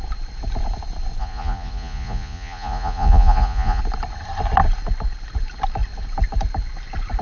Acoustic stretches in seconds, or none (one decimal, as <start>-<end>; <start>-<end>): 0.0-1.2; 3.8-7.2